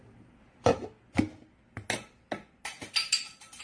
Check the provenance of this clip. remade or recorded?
recorded